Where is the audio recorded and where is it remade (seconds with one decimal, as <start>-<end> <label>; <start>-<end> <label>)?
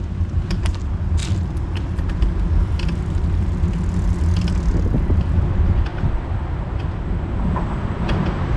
0.0-8.6 remade